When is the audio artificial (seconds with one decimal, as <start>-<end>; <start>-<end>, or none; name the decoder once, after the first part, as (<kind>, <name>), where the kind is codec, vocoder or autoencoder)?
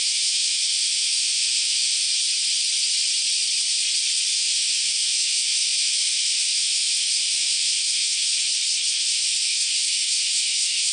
0.0-2.1 (autoencoder, DAC-VAE); 4.3-8.3; 8.9-10.9